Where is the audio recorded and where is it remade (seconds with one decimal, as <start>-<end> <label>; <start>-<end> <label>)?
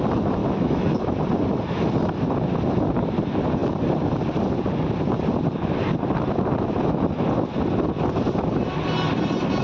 0.0-0.4 recorded; 0.4-1.1 remade; 1.1-9.6 recorded